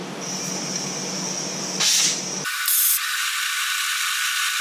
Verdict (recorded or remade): recorded